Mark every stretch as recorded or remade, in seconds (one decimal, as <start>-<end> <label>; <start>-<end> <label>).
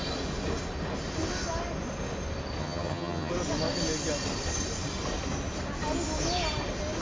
0.0-2.6 recorded; 2.6-3.3 remade; 3.3-7.0 recorded